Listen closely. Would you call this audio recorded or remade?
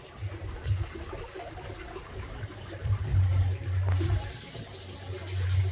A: recorded